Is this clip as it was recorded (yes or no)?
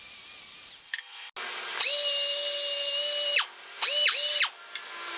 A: yes